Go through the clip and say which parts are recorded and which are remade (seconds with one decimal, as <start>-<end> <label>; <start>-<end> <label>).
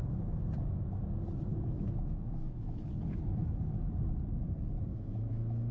0.0-1.5 recorded; 1.5-2.9 remade; 2.9-4.9 recorded; 4.9-5.7 remade